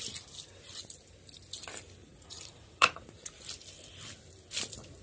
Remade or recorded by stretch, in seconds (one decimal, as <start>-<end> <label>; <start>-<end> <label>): 0.0-2.0 recorded; 2.0-3.4 remade; 3.4-5.0 recorded